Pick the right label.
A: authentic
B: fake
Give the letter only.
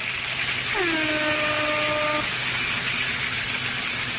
A